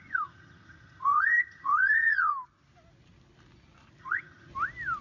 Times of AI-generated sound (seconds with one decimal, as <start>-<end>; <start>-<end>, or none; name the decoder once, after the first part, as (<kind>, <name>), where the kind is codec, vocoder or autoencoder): 0.0-2.3 (vocoder, HiFi-GAN); 4.0-4.5